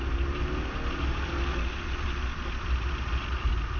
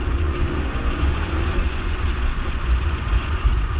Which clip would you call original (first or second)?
first